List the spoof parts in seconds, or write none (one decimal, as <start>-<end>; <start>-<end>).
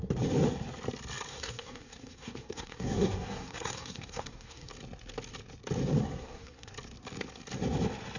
1.3-4.7; 6.0-6.7